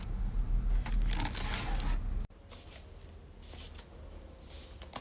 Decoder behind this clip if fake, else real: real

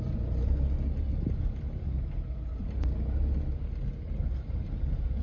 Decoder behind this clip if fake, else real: real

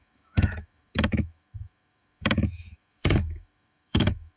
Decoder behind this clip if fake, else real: fake, autoencoder, DAC-VAE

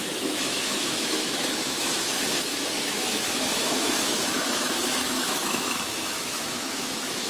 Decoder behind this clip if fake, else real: fake, autoencoder, DAC-VAE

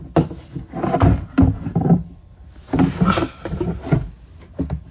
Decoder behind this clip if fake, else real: real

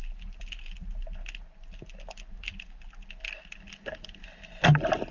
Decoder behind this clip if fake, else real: real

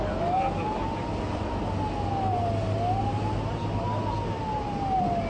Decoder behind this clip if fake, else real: real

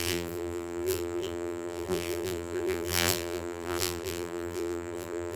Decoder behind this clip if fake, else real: fake, vocoder, BigVGAN v2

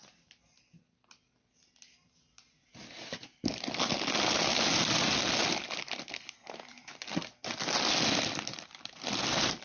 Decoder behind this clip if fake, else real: real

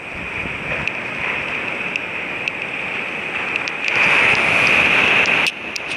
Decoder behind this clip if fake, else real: real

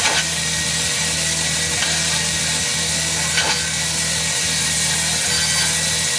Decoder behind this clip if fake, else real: real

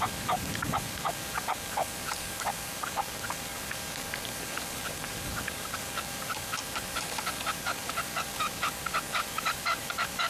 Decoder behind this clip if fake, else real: fake, codec, DAC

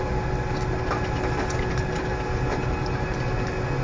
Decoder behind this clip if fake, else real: real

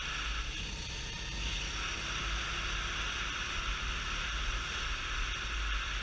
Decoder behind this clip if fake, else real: real